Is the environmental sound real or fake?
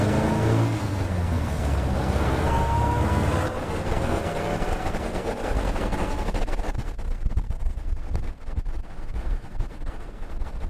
fake